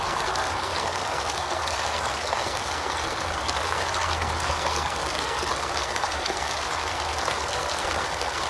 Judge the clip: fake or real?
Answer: fake